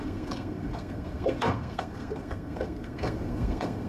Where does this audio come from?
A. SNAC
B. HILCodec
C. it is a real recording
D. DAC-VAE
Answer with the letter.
A